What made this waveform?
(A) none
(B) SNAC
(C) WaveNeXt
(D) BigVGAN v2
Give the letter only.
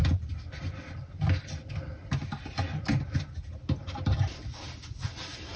A